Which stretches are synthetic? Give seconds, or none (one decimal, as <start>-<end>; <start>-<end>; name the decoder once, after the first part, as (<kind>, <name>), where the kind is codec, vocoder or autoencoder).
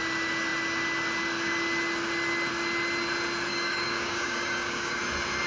3.5-5.0 (codec, DAC)